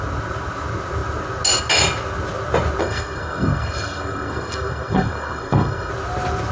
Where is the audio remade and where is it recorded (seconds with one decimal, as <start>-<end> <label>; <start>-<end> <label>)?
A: 0.0-2.8 recorded; 2.8-5.9 remade; 5.9-6.5 recorded